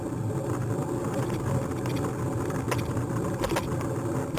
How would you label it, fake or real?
real